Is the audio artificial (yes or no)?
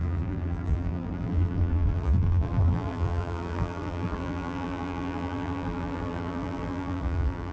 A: yes